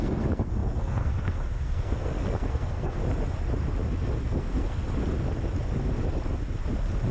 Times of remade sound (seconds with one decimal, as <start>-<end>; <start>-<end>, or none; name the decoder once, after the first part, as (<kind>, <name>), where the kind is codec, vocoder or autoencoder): 0.0-3.0 (codec, SNAC); 4.2-4.8